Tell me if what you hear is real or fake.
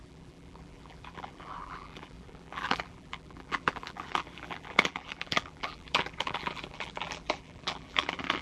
fake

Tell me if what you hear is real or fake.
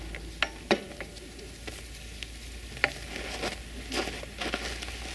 real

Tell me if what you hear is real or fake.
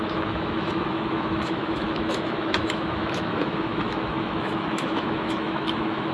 fake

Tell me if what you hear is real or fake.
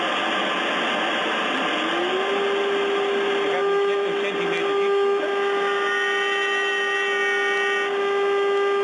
real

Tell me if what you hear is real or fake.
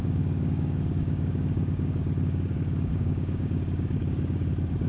fake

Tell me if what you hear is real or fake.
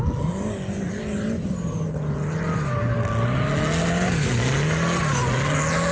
real